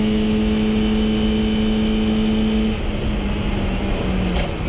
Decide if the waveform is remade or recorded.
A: recorded